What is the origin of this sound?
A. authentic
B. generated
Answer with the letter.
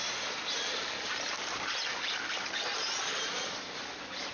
A